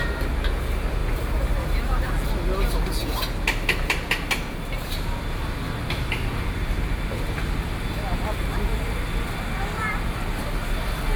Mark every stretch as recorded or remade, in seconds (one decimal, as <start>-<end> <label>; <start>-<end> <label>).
0.0-11.2 recorded